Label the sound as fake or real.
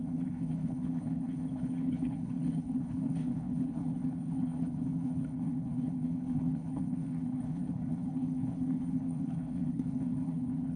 fake